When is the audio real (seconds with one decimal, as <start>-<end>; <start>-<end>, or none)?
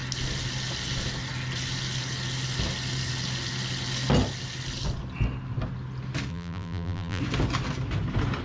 0.0-6.3; 7.2-8.4